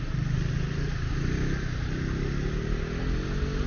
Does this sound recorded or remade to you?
recorded